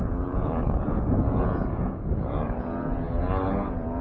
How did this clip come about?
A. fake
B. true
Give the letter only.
A